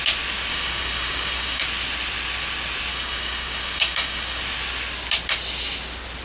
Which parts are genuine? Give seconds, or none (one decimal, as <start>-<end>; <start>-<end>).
0.0-0.5; 1.6-2.9; 4.4-6.2